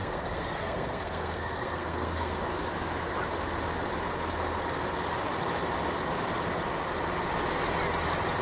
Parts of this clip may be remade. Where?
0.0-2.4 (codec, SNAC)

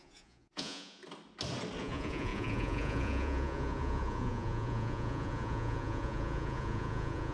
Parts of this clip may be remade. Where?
0.0-1.0 (vocoder, Vocos); 1.8-7.3

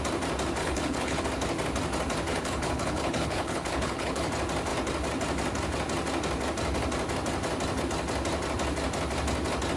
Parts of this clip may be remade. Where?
0.6-1.2 (codec, HILCodec); 2.3-4.3

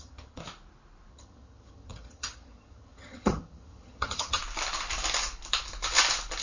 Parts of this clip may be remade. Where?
0.0-0.4 (vocoder, HiFi-GAN); 1.1-4.4